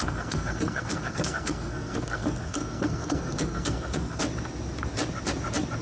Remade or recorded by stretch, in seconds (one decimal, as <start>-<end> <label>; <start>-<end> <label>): 0.0-4.2 remade; 4.2-5.8 recorded